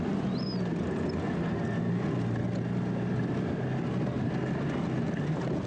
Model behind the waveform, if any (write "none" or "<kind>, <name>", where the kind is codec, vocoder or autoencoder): none